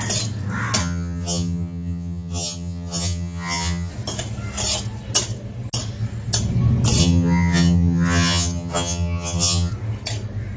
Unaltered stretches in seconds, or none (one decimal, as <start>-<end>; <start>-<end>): 0.0-0.8; 3.9-7.0; 9.7-10.6